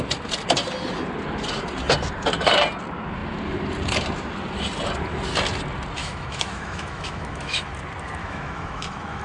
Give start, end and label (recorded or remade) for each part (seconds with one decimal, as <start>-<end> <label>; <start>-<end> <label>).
0.0-6.0 recorded; 6.0-7.7 remade; 7.7-8.2 recorded; 8.2-9.2 remade